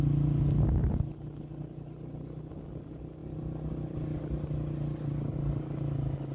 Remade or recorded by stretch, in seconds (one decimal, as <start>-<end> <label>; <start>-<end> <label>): 0.0-6.3 recorded